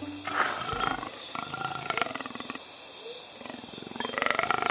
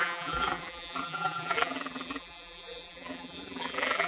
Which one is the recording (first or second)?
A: first